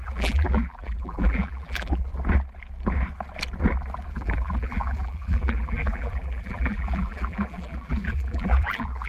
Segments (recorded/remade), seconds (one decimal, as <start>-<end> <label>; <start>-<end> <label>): 0.0-2.1 remade; 2.1-4.1 recorded; 4.1-9.1 remade